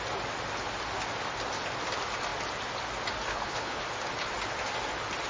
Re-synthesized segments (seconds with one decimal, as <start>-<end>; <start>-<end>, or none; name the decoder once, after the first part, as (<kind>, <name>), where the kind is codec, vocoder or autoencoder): 3.3-3.8 (codec, HILCodec)